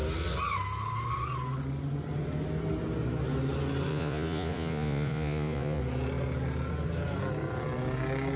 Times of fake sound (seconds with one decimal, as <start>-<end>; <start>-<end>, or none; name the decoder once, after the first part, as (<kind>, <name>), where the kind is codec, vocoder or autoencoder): 3.9-5.8 (vocoder, Vocos)